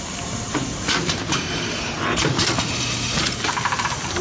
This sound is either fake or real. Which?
fake